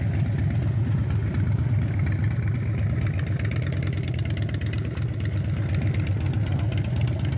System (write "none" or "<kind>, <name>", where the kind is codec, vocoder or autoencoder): none